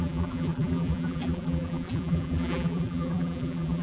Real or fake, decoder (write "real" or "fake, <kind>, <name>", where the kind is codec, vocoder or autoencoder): fake, vocoder, BigVGAN v2